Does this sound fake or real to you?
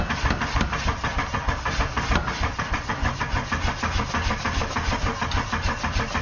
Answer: real